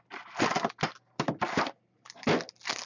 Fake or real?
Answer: real